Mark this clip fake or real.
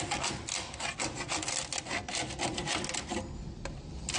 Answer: real